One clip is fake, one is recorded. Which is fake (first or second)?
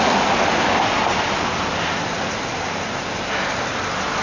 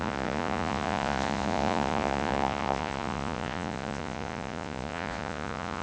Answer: second